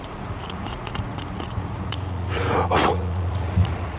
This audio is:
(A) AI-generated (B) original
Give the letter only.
A